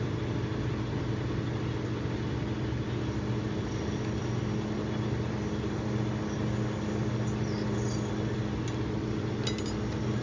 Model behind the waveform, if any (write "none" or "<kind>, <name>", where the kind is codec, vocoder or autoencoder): none